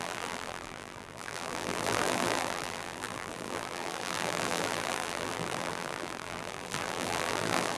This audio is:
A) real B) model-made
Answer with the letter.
B